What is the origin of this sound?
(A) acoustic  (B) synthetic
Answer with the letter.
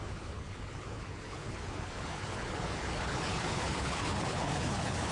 B